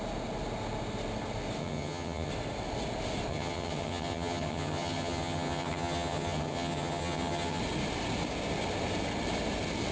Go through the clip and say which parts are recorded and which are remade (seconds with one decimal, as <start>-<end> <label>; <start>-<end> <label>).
0.0-1.6 recorded; 1.6-2.3 remade; 2.3-3.3 recorded; 3.3-7.6 remade; 7.6-9.9 recorded